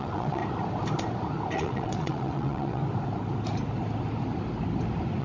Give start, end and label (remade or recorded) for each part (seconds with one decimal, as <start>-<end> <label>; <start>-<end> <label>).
0.0-0.4 remade; 0.4-1.5 recorded; 1.5-2.8 remade; 2.8-5.2 recorded